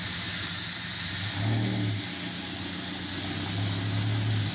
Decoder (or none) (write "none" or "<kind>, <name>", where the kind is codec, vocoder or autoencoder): none